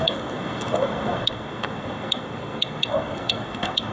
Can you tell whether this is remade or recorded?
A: remade